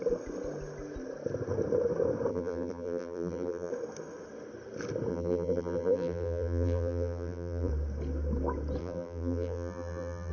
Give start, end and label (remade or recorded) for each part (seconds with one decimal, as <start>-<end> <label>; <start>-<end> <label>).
0.0-2.3 recorded; 2.3-3.7 remade; 3.7-5.1 recorded; 5.1-7.7 remade; 7.7-8.8 recorded; 8.8-10.3 remade